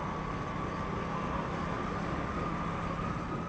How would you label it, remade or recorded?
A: recorded